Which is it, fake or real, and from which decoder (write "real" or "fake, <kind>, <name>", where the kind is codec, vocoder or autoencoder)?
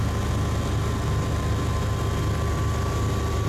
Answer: real